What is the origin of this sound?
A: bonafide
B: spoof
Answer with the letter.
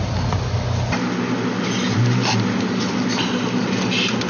A